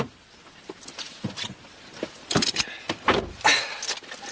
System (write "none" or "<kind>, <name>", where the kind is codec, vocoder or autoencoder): none